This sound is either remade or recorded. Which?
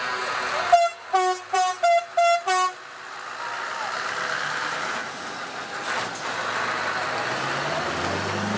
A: recorded